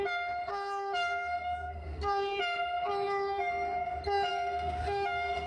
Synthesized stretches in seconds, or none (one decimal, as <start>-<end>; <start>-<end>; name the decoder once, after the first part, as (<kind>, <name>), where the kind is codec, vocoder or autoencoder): 0.5-2.4 (codec, SNAC); 2.9-3.9; 4.3-5.5